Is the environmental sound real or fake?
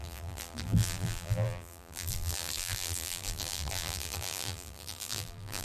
fake